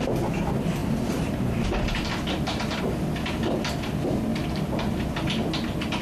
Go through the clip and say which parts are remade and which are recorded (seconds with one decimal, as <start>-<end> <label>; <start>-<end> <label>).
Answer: 0.0-0.8 recorded; 0.8-2.8 remade; 2.8-6.0 recorded